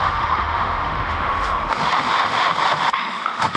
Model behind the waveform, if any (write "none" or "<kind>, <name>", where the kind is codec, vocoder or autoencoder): autoencoder, DAC-VAE